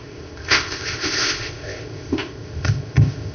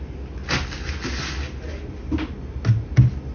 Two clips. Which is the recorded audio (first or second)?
second